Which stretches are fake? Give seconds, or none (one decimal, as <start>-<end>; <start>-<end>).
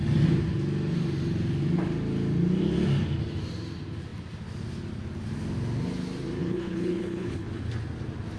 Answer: 6.4-7.6